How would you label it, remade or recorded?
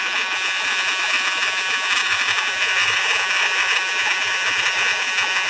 remade